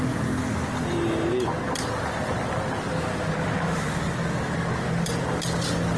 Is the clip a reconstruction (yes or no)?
no